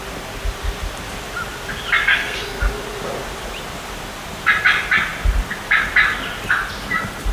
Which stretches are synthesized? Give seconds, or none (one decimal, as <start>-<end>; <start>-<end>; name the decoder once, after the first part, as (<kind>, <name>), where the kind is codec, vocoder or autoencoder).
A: 2.1-2.7 (codec, SNAC)

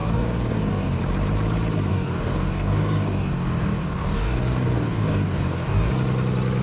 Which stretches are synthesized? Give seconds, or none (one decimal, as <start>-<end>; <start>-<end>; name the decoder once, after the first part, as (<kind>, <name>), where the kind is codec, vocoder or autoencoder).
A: 0.0-1.0 (codec, DAC); 1.9-5.9

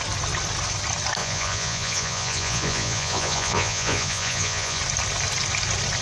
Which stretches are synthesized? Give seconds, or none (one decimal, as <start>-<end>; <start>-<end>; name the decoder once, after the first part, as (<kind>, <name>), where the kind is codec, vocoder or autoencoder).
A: 1.2-4.8 (vocoder, Vocos)

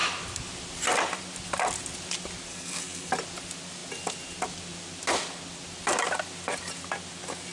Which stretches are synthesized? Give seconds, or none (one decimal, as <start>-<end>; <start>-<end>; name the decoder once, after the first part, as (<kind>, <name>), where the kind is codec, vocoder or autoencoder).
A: 2.5-3.1 (codec, SNAC)

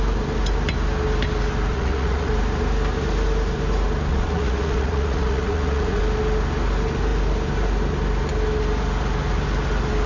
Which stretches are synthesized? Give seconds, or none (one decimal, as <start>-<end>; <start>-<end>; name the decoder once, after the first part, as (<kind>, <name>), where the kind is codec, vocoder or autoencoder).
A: 1.7-2.3 (vocoder, Vocos); 4.1-6.0

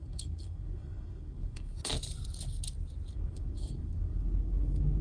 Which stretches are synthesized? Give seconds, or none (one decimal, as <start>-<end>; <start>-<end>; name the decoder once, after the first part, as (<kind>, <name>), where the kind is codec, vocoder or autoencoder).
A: 0.0-1.8 (codec, SNAC); 3.1-5.0